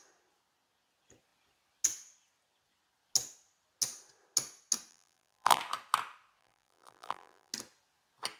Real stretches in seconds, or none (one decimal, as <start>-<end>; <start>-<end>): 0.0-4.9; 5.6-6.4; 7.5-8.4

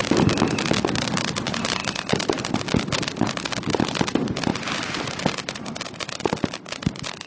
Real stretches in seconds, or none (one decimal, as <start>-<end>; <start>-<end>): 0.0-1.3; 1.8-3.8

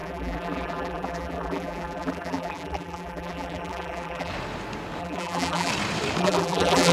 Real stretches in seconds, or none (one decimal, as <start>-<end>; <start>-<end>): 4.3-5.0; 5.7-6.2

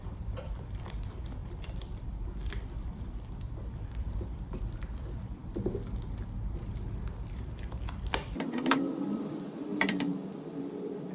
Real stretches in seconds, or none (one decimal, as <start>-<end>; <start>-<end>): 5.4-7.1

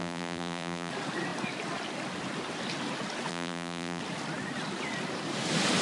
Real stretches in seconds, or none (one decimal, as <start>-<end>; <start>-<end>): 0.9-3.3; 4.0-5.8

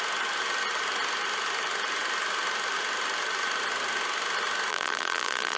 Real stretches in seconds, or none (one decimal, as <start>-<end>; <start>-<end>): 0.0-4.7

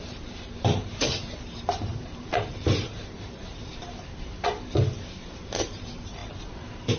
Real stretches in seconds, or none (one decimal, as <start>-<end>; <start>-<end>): none